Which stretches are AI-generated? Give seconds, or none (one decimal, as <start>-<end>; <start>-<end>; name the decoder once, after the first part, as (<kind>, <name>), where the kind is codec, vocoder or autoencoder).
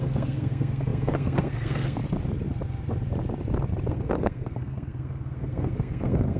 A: 0.0-2.0 (codec, SNAC); 3.9-6.4